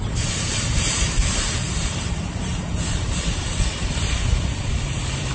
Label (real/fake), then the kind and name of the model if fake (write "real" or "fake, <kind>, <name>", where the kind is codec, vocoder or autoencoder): fake, vocoder, BigVGAN v2